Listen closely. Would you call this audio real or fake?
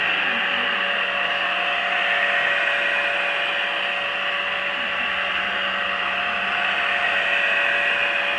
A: real